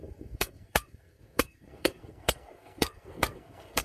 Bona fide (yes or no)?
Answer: no